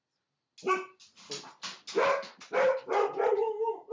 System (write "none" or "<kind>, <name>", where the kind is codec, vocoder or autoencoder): none